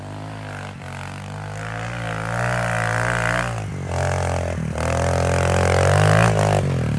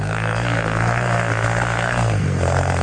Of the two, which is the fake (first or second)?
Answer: second